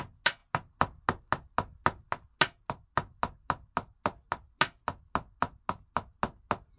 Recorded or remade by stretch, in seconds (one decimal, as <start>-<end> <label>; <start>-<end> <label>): 0.0-6.8 recorded